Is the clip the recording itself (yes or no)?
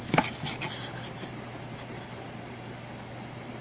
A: yes